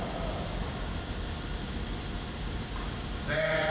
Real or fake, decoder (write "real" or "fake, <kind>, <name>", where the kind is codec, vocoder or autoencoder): real